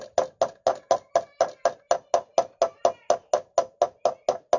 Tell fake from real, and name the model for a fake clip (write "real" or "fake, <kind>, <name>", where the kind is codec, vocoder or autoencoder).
real